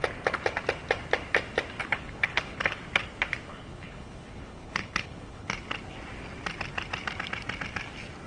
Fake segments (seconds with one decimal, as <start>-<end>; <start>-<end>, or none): 1.8-2.8; 3.5-5.5